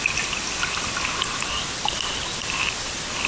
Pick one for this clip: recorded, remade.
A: recorded